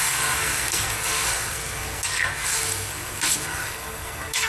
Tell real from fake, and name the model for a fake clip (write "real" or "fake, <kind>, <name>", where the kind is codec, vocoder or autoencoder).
fake, codec, SNAC